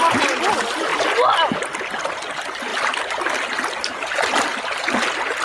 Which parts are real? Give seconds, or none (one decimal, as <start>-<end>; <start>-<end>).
0.0-5.4